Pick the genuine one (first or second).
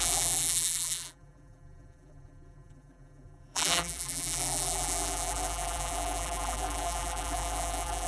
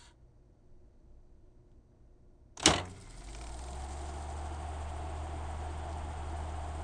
second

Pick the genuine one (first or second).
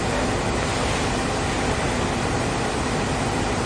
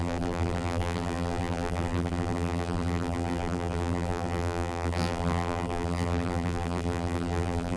first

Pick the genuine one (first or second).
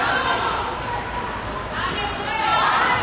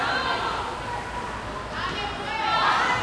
second